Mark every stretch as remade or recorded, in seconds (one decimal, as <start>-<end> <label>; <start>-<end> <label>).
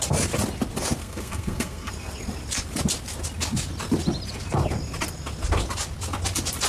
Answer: 0.0-1.0 recorded; 1.0-1.9 remade; 1.9-6.7 recorded